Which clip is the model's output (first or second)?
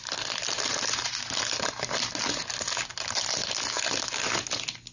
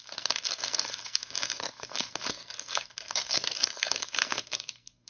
second